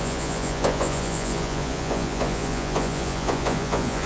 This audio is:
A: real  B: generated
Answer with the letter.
B